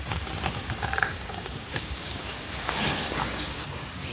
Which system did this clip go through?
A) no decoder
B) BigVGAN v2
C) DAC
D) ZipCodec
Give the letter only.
C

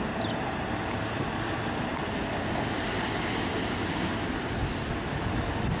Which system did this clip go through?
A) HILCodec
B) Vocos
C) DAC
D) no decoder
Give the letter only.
D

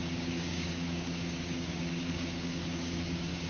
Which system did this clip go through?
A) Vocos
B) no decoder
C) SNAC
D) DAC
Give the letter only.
D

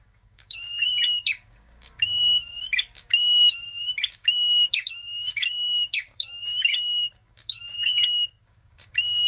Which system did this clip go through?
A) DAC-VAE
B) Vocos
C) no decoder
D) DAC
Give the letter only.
D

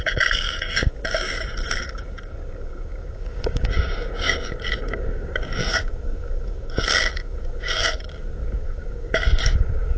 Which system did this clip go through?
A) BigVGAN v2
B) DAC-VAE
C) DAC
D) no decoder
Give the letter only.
C